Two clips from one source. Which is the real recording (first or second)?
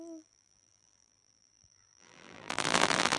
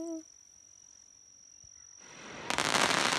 second